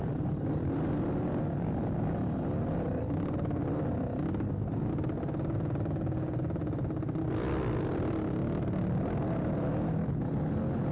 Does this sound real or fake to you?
real